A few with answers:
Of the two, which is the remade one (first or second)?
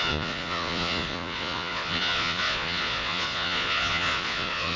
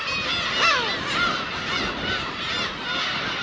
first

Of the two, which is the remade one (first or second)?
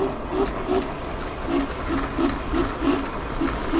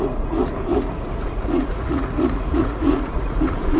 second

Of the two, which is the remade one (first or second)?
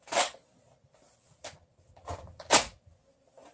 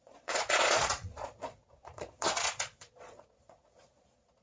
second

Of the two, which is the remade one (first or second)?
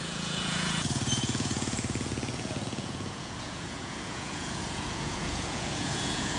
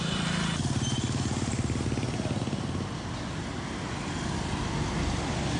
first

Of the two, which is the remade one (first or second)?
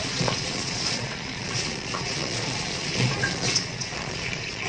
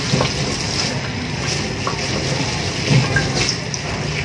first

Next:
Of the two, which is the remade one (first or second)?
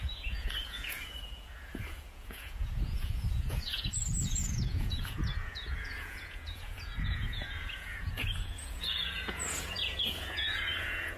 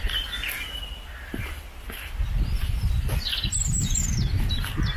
first